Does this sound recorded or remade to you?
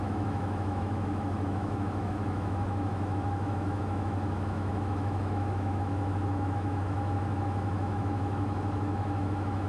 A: remade